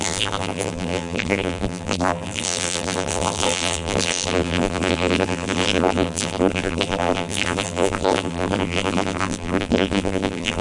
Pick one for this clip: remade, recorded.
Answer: remade